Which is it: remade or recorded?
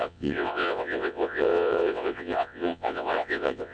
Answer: remade